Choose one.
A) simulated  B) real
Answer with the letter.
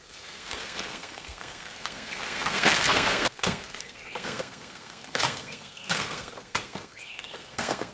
A